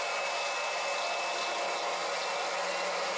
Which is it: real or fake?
real